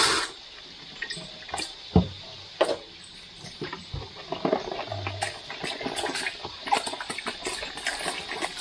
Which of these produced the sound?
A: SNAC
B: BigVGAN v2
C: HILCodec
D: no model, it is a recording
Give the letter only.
D